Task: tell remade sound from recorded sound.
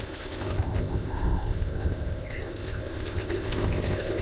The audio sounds remade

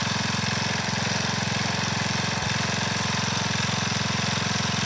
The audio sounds recorded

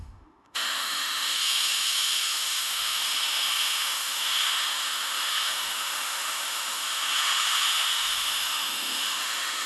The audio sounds remade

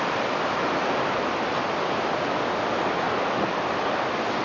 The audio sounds recorded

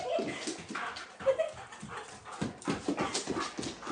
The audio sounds recorded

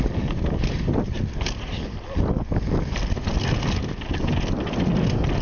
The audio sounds recorded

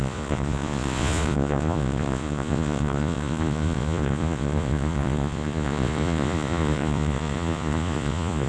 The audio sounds remade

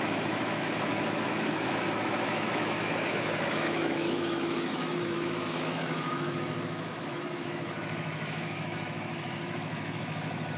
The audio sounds remade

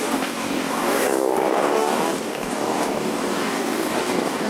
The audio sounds remade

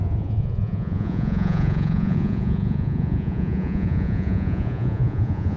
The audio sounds remade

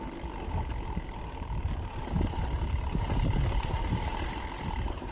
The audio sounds recorded